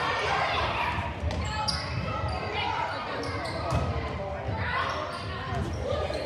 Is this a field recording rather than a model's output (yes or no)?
yes